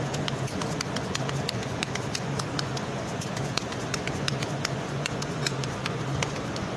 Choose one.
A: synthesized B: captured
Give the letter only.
A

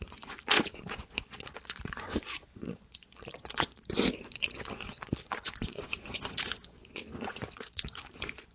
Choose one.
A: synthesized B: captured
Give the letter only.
A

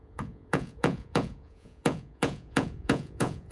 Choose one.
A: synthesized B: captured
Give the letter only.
A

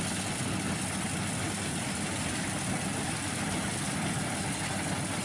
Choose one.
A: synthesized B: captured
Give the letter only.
B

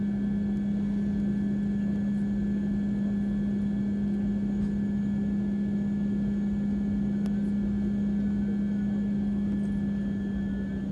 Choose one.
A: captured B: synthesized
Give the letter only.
A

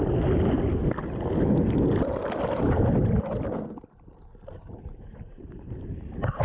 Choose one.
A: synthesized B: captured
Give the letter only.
B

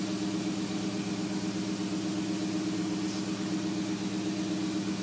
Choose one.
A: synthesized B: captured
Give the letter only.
B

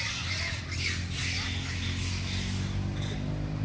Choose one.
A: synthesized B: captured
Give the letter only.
B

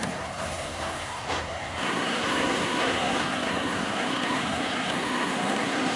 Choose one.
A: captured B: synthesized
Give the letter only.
B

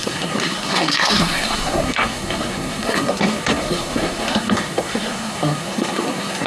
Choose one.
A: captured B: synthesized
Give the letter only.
B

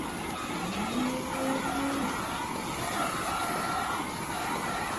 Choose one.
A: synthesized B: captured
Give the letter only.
B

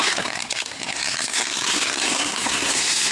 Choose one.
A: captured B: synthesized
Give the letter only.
B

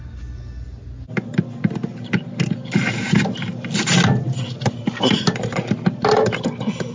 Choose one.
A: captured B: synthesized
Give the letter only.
A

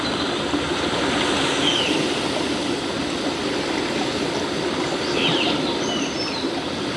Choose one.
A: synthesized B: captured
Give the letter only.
B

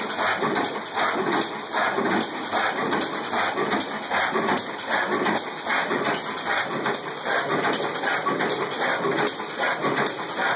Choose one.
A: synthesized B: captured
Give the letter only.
B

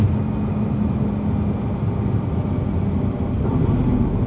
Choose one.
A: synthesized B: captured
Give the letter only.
B